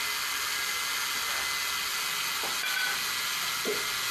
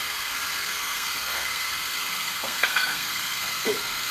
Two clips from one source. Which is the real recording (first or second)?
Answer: first